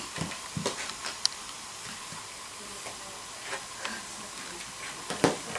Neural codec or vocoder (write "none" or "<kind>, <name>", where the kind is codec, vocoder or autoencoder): none